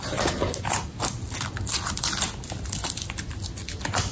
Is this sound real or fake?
real